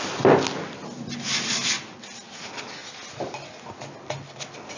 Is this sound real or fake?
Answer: real